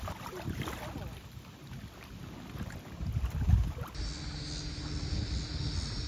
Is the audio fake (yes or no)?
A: no